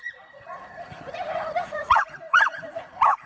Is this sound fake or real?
fake